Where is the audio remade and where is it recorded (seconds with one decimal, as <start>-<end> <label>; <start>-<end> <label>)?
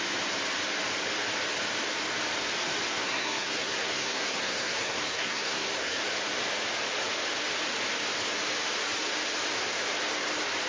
0.0-2.9 recorded; 2.9-6.0 remade; 6.0-10.7 recorded